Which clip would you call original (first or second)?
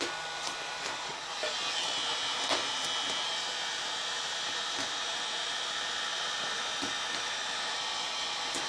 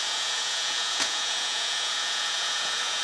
first